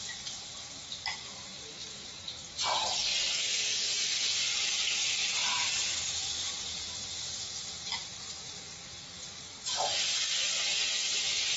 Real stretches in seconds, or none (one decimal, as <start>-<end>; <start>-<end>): 0.0-1.8; 3.0-5.4; 6.6-11.6